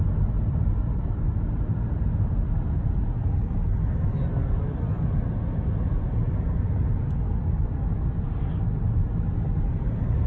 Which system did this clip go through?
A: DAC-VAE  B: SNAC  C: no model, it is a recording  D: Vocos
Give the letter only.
C